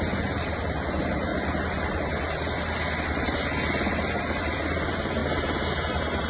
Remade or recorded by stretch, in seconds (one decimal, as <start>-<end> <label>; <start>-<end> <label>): 0.0-1.3 remade; 1.3-4.2 recorded; 4.2-5.2 remade; 5.2-6.3 recorded